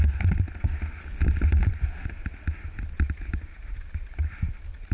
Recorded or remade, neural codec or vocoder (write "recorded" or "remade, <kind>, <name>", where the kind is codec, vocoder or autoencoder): recorded